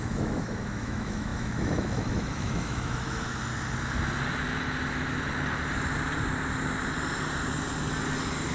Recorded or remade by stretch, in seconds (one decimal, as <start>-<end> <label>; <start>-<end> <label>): 0.0-3.5 remade; 3.5-8.5 recorded